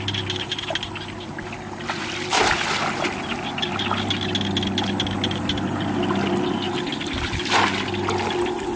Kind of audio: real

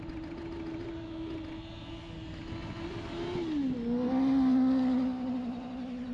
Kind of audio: real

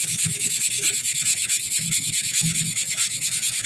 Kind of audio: fake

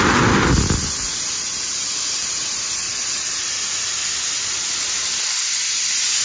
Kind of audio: real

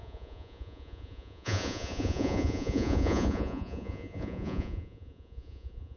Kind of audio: fake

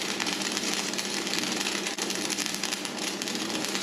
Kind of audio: fake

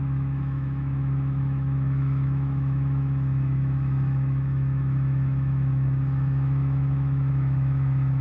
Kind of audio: fake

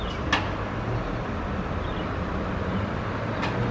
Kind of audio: real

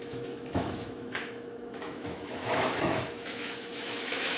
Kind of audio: fake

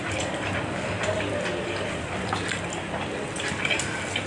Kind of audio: real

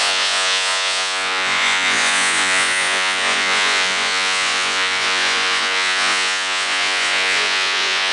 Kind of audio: fake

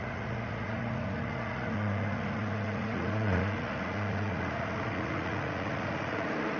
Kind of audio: fake